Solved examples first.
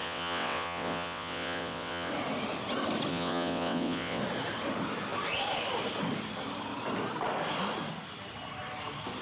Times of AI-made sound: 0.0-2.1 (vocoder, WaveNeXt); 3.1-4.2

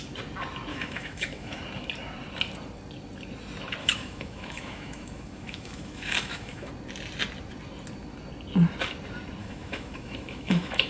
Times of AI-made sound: 0.7-1.6 (autoencoder, DAC-VAE); 3.8-6.7; 9.4-10.9